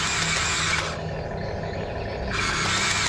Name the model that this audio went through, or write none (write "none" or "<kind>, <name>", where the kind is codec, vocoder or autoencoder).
none